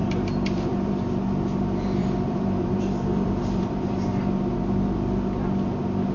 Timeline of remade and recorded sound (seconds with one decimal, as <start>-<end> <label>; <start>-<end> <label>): 0.0-0.9 remade; 0.9-2.0 recorded; 2.0-4.2 remade; 4.2-6.1 recorded